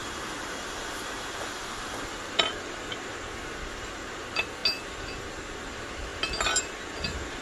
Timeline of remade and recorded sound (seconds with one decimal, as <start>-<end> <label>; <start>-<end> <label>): 0.0-4.6 remade; 4.6-5.6 recorded; 5.6-6.1 remade; 6.1-6.6 recorded; 6.6-7.4 remade